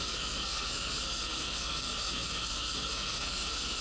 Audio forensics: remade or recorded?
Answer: remade